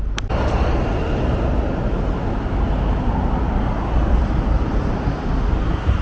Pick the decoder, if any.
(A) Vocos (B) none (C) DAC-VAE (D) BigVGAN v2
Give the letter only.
B